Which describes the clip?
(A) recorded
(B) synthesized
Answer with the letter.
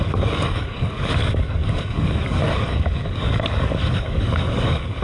B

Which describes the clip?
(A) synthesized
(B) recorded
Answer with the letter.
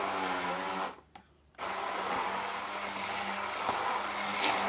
B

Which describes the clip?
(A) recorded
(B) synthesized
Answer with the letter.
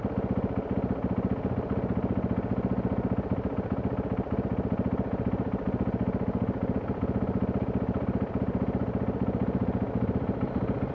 A